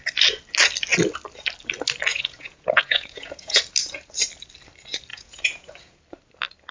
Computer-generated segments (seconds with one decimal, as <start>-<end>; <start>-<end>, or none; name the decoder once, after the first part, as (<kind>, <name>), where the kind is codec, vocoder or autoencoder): 2.1-3.6 (vocoder, Vocos); 5.1-6.0